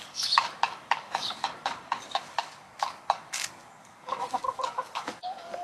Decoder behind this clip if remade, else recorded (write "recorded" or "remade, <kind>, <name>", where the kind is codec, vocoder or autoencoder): remade, codec, DAC